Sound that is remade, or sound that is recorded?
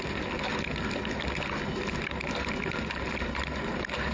recorded